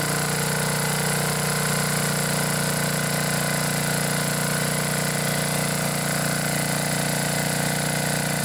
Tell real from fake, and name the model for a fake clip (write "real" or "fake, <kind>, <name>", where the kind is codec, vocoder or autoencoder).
real